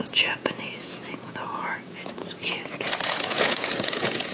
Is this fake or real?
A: fake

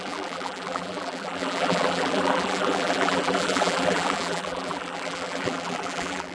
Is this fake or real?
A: fake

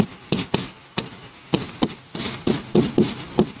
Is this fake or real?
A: real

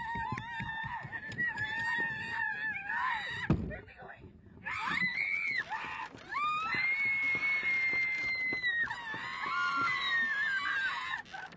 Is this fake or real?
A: real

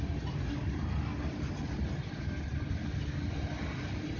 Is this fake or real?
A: real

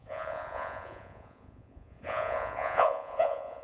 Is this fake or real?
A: fake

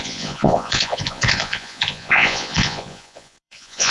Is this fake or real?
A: fake